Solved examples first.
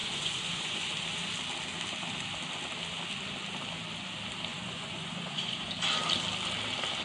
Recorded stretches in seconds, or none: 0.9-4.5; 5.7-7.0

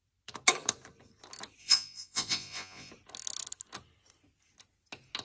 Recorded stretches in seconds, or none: 0.0-1.6; 2.9-5.2

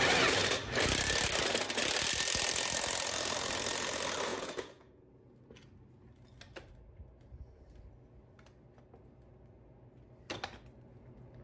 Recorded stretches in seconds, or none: 0.0-4.3; 5.3-11.4